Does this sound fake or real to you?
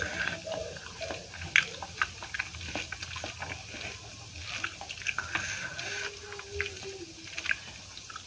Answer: real